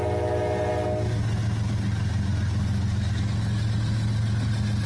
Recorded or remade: recorded